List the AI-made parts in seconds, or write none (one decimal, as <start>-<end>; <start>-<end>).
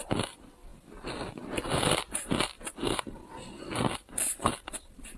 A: 0.0-0.7; 3.8-5.2